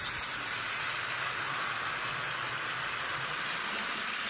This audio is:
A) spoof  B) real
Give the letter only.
B